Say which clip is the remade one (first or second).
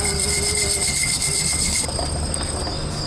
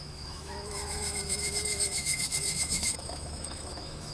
second